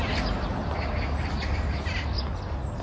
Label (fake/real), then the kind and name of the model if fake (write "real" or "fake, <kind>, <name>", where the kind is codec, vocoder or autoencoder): real